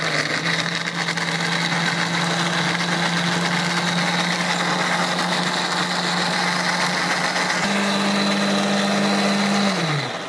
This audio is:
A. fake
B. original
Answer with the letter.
B